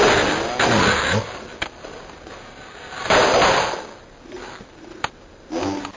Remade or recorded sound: recorded